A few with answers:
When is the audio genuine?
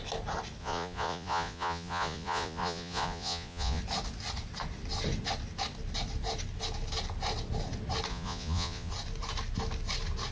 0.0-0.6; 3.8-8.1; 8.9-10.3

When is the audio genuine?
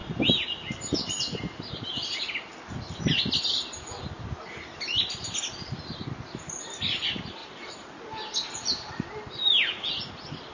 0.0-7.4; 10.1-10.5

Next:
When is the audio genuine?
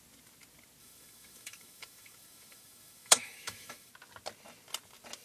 0.0-0.8; 3.9-5.2